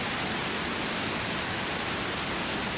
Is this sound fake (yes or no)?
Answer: no